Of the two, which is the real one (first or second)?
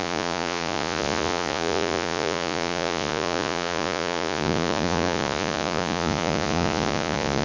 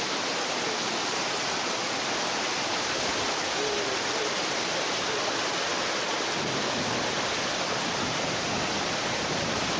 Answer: second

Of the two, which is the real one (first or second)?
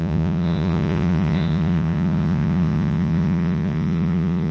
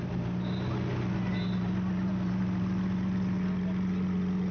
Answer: second